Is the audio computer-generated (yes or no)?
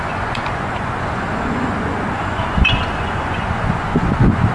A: yes